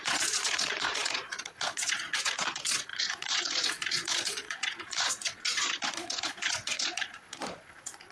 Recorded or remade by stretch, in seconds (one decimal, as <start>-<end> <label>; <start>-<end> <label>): 0.0-8.1 remade

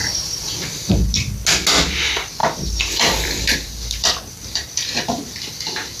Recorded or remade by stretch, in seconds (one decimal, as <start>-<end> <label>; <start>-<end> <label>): 0.0-0.9 remade; 0.9-2.4 recorded; 2.4-5.5 remade; 5.5-6.0 recorded

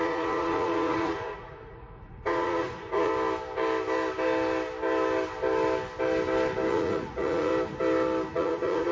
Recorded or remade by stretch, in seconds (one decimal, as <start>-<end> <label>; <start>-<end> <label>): 0.0-3.1 remade; 3.1-6.7 recorded; 6.7-7.5 remade; 7.5-8.3 recorded; 8.3-8.9 remade

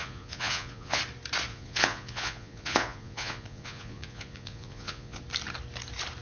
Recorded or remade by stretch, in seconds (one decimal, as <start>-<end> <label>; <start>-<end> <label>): 0.0-1.0 remade; 1.0-1.5 recorded; 1.5-5.2 remade; 5.2-6.2 recorded

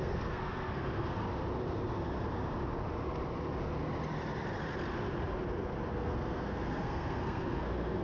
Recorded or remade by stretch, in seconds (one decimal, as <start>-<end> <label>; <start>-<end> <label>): 0.0-1.2 remade; 1.2-5.9 recorded; 5.9-8.0 remade